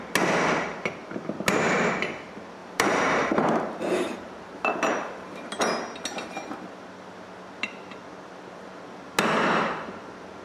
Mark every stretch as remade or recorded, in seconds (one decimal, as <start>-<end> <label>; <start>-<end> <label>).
0.0-2.6 recorded; 2.6-5.6 remade; 5.6-10.4 recorded

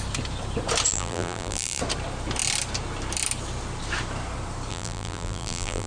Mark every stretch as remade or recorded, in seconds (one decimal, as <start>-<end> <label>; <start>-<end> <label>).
0.0-0.9 recorded; 0.9-1.8 remade; 1.8-4.7 recorded; 4.7-5.9 remade

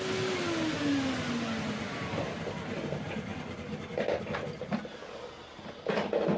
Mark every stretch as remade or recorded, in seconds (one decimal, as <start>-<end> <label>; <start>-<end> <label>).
0.0-6.4 recorded

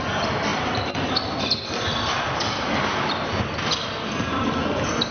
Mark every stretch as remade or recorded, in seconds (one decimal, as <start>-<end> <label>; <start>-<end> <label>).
0.0-5.1 recorded